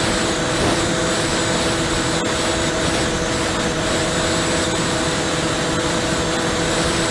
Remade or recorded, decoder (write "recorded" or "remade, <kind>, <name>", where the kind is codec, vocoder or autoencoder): recorded